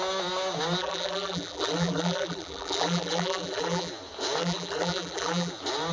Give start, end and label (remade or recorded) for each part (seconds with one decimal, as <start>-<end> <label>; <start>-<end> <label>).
0.0-0.8 recorded; 0.8-3.9 remade; 3.9-4.4 recorded; 4.4-5.5 remade; 5.5-5.9 recorded